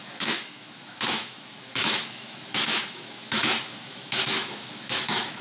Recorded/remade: remade